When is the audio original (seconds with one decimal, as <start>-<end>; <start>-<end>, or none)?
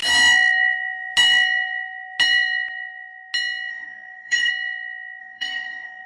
0.0-3.7; 4.5-5.2